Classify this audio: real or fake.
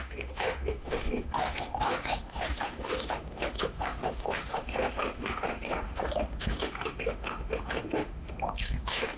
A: fake